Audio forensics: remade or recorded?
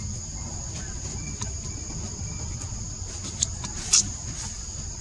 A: recorded